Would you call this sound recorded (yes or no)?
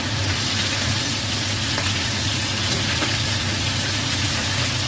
no